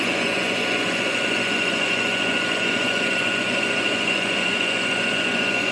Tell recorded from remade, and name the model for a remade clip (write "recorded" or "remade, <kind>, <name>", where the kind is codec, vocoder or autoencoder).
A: remade, vocoder, Vocos